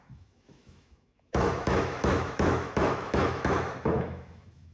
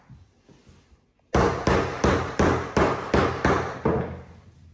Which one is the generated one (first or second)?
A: first